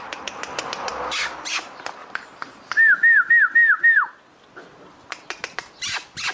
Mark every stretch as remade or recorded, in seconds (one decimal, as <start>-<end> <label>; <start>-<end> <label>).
0.0-6.3 recorded